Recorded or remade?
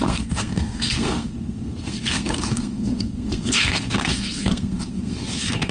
remade